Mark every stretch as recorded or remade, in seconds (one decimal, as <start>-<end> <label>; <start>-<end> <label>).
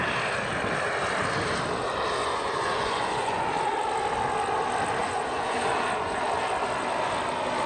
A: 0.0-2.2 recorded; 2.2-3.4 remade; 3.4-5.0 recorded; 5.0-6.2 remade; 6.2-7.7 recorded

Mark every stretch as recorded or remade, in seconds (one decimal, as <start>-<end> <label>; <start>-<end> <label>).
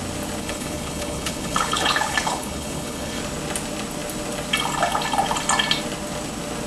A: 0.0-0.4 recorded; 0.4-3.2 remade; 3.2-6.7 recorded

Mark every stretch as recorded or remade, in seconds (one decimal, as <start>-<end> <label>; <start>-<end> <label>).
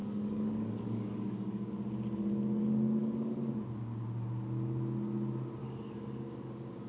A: 0.0-1.7 remade; 1.7-3.0 recorded; 3.0-3.6 remade; 3.6-5.6 recorded; 5.6-6.5 remade; 6.5-6.9 recorded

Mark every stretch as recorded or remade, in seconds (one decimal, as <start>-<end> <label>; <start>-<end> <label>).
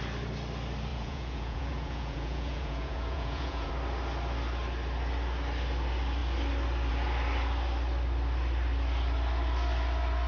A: 0.0-0.9 recorded; 0.9-3.7 remade; 3.7-10.3 recorded